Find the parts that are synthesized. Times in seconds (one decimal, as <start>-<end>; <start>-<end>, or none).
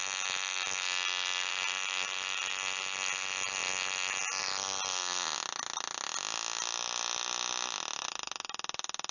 none